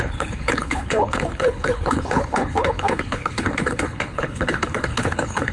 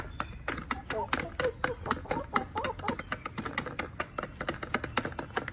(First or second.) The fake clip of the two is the first